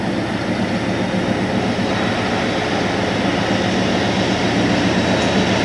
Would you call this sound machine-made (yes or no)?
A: no